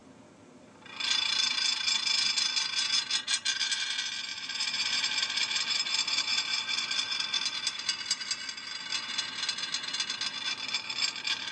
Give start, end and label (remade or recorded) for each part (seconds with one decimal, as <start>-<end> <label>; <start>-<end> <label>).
0.0-4.3 recorded; 4.3-8.2 remade; 8.2-11.5 recorded